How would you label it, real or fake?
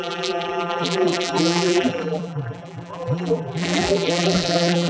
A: fake